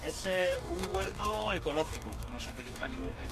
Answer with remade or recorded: remade